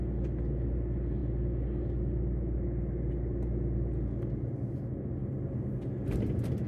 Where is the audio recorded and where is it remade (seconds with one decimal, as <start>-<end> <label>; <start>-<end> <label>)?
0.0-6.7 recorded